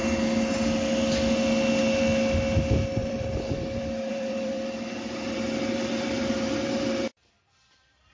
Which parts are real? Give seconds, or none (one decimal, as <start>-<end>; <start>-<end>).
0.0-3.0